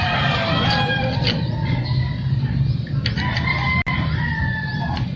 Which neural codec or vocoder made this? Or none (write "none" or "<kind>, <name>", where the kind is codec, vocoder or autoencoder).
none